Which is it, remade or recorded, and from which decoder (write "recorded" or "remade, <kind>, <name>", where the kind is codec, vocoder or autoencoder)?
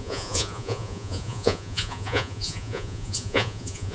remade, vocoder, Vocos